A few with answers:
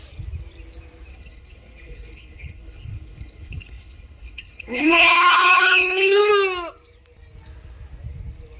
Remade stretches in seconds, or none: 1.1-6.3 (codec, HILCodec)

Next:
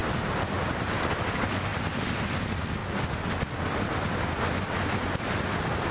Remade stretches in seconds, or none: 0.0-0.6 (vocoder, BigVGAN v2); 1.7-2.4

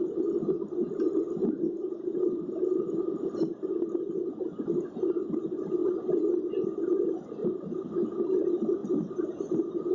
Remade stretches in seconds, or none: 2.1-3.3 (vocoder, BigVGAN v2); 5.8-6.4; 7.4-7.9